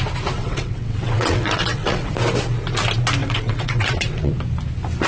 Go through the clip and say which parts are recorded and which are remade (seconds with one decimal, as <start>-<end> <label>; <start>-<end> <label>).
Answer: 0.0-0.4 recorded; 0.4-2.1 remade; 2.1-3.2 recorded; 3.2-4.3 remade; 4.3-5.1 recorded